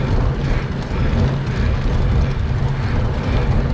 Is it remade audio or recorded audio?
recorded